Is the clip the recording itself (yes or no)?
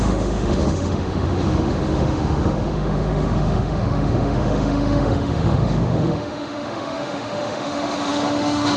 no